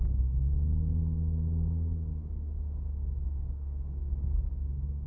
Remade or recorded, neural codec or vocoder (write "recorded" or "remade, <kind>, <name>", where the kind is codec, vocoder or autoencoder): remade, codec, DAC